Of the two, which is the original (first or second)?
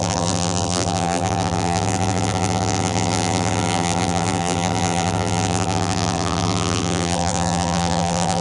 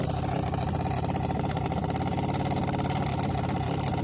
second